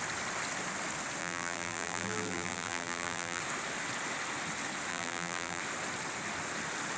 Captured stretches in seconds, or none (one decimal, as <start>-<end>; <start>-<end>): 0.0-1.2; 3.4-4.9; 5.6-7.0